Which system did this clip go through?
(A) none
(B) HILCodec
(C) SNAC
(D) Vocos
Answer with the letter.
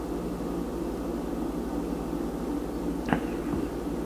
A